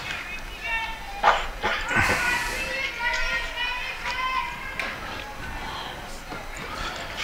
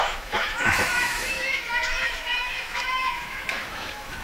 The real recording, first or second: first